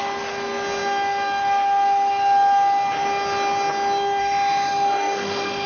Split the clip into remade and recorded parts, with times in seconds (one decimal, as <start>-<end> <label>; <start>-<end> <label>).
0.0-4.2 recorded; 4.2-5.7 remade